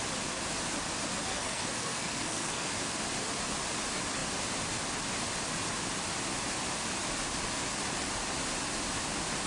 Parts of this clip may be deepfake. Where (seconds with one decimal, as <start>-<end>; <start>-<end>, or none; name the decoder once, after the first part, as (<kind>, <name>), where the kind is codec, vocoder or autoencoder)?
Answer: 1.3-2.7 (codec, SNAC)